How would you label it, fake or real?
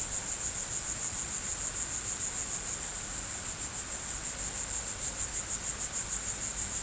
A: real